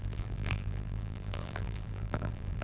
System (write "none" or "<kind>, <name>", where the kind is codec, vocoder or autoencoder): vocoder, BigVGAN v2